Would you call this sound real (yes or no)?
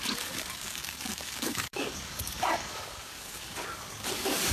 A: no